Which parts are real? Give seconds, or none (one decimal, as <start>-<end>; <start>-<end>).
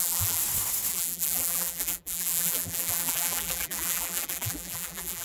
0.4-0.9